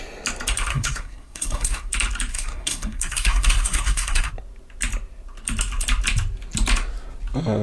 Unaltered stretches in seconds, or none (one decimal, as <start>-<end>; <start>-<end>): 0.0-0.7; 1.9-2.3; 4.3-7.6